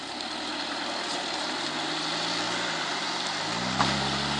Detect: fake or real real